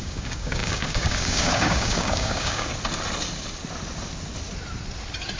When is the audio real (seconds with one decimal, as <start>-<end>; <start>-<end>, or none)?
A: 2.7-5.4